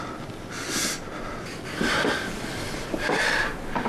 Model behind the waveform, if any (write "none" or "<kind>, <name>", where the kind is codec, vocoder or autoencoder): none